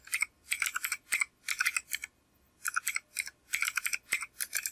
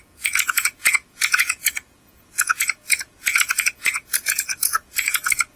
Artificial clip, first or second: second